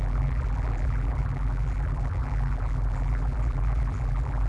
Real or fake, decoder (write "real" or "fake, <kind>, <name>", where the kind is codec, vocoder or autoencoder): fake, vocoder, BigVGAN v2